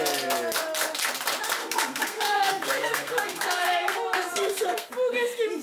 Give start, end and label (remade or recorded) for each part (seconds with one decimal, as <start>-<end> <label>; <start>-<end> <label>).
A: 0.0-1.6 recorded; 1.6-4.9 remade; 4.9-5.6 recorded

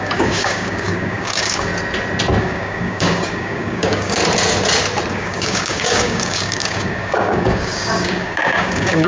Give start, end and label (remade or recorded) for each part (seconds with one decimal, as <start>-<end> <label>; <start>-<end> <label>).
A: 0.0-1.7 remade; 1.7-2.4 recorded; 2.4-4.2 remade; 4.2-5.1 recorded; 5.1-9.1 remade